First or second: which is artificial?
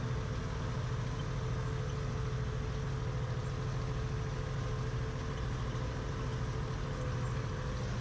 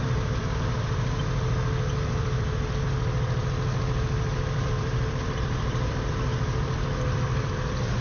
second